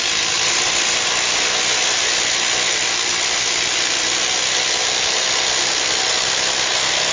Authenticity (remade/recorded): recorded